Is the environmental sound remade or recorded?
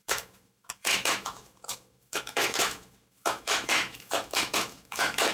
remade